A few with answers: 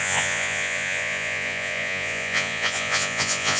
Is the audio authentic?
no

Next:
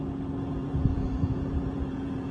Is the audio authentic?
no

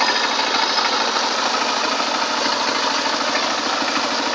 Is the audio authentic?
yes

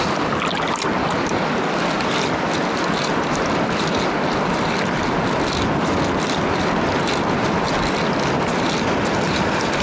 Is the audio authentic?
yes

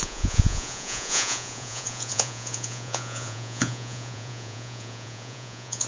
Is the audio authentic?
no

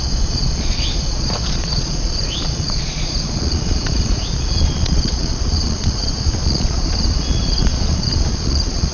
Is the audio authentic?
no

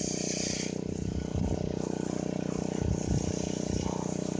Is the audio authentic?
yes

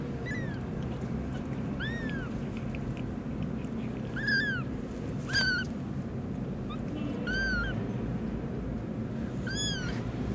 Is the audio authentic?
yes